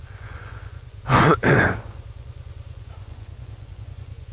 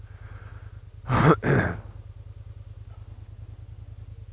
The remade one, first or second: first